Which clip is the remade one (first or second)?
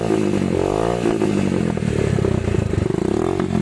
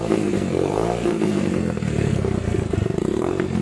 second